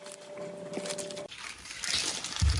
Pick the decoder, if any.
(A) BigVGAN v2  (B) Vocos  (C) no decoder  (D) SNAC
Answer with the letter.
C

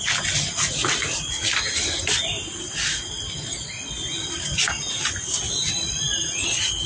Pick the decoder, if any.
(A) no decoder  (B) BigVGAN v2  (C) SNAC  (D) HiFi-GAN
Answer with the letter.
A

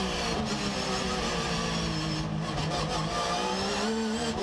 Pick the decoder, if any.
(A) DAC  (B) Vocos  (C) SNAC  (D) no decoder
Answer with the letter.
D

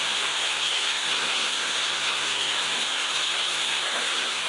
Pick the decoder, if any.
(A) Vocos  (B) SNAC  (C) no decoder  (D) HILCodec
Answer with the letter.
B